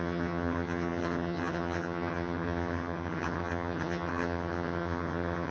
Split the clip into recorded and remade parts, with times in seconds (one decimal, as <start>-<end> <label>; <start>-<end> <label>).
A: 0.0-5.5 remade